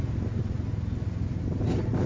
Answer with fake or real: real